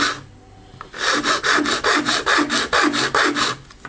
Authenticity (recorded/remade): recorded